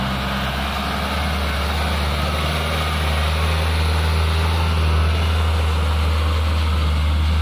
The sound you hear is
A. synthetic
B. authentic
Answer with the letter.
B